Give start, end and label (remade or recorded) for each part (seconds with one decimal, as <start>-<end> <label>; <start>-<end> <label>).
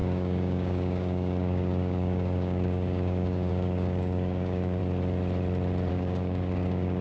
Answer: 0.0-4.8 remade; 4.8-5.9 recorded; 5.9-7.0 remade